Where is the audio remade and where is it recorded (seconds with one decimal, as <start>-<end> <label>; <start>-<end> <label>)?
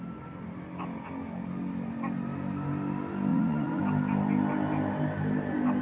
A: 0.0-3.3 recorded; 3.3-3.8 remade; 3.8-5.8 recorded